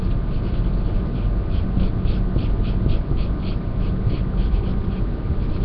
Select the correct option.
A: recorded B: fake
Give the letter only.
A